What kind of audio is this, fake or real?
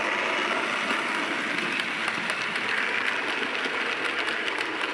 real